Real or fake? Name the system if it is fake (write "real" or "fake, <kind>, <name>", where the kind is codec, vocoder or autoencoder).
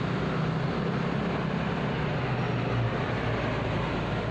real